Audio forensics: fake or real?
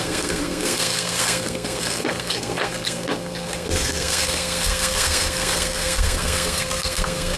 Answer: fake